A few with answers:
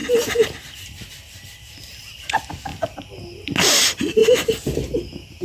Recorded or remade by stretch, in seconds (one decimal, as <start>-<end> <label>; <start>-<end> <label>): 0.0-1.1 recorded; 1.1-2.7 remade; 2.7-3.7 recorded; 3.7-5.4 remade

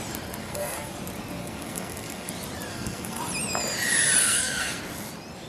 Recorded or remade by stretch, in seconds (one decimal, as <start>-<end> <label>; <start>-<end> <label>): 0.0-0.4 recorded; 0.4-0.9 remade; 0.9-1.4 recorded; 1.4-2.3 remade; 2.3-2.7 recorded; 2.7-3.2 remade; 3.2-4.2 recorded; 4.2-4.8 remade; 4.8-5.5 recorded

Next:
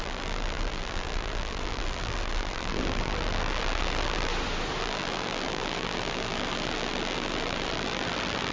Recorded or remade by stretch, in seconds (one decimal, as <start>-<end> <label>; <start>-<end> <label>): 0.0-4.3 remade; 4.3-4.8 recorded; 4.8-8.5 remade

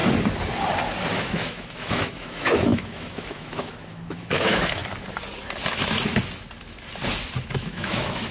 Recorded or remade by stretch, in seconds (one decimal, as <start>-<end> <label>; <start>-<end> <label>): 0.0-1.1 recorded; 1.1-4.8 remade; 4.8-7.5 recorded; 7.5-8.3 remade